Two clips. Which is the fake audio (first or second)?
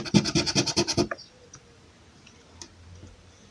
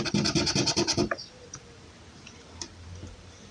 second